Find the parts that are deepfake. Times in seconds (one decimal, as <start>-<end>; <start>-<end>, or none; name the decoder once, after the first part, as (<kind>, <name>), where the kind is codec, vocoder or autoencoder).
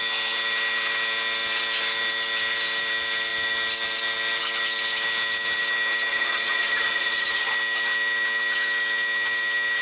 6.1-7.5 (vocoder, Vocos)